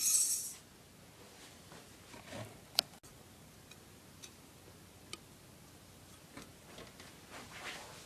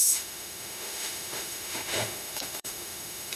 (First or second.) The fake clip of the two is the second